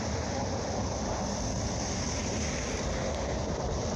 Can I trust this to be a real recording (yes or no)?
yes